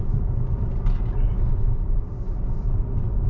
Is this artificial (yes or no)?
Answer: no